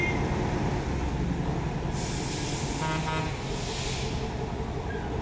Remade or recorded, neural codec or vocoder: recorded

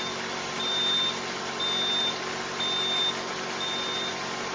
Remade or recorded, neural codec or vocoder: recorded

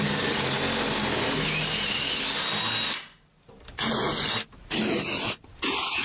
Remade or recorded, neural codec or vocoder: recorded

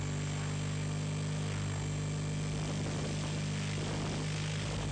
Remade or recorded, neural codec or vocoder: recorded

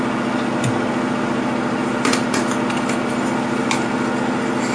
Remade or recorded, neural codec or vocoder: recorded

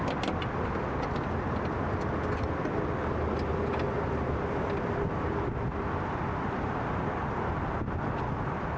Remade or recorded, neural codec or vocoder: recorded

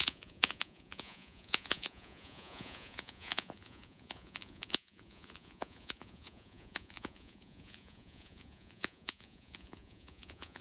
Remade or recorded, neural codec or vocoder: remade, vocoder, Vocos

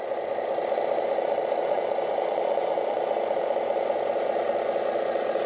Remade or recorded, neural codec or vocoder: remade, vocoder, Vocos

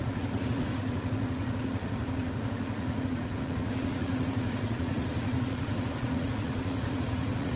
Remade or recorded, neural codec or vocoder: remade, vocoder, Vocos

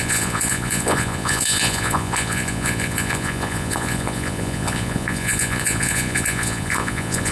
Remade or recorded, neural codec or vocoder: remade, vocoder, Vocos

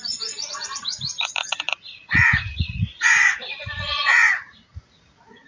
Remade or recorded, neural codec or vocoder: remade, vocoder, Vocos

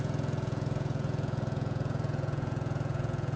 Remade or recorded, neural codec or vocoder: remade, vocoder, Vocos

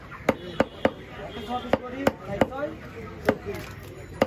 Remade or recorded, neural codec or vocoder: recorded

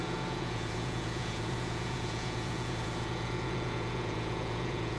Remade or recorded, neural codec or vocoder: remade, vocoder, Vocos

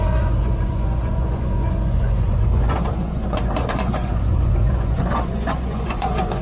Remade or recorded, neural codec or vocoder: remade, vocoder, Vocos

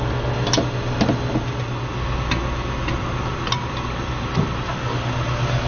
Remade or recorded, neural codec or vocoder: recorded